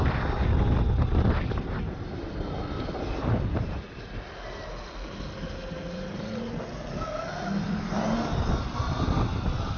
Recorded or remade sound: recorded